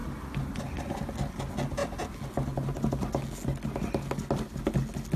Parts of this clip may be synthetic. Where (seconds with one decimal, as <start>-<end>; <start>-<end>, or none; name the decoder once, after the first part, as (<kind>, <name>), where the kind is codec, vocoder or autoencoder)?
none